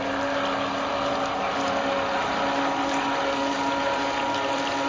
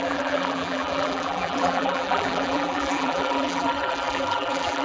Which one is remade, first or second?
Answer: second